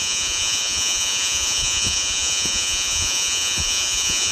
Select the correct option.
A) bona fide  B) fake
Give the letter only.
B